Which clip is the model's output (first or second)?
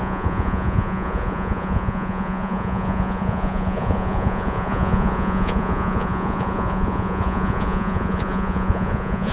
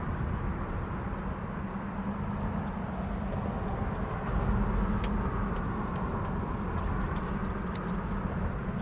first